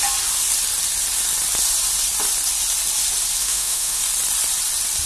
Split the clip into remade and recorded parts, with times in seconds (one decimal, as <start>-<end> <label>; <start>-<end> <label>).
0.0-3.4 recorded; 3.4-4.0 remade; 4.0-5.1 recorded